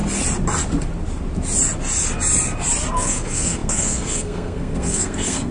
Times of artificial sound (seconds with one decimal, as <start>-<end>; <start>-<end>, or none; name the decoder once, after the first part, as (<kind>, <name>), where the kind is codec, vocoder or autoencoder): 2.9-5.5 (codec, SNAC)